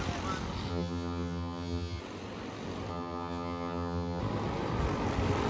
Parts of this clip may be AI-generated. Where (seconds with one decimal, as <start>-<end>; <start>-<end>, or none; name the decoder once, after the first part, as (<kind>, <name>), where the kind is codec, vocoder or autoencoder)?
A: 0.7-2.0 (vocoder, HiFi-GAN); 2.9-4.2